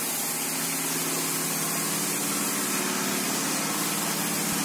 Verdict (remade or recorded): recorded